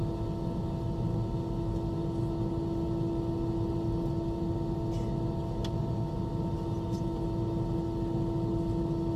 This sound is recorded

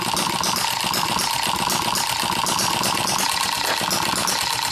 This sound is recorded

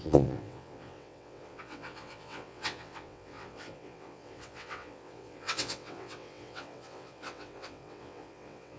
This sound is remade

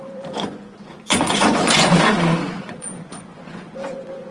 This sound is remade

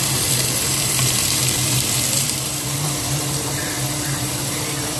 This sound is remade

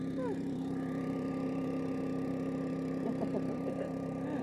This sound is remade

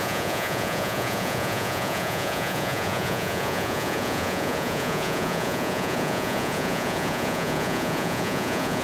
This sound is remade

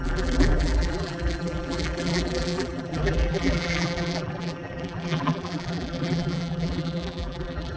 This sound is remade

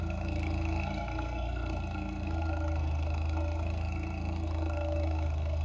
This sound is remade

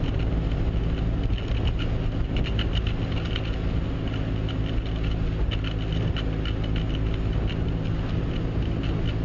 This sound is recorded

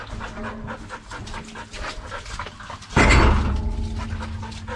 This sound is recorded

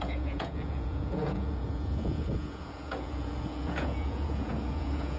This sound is remade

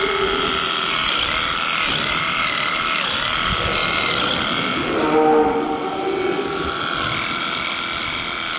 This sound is recorded